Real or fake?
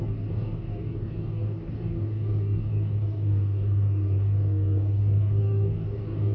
fake